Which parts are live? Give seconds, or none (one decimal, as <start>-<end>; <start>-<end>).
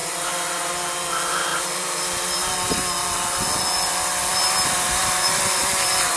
0.7-1.5; 2.4-4.3